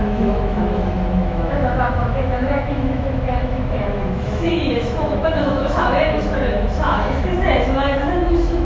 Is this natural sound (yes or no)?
no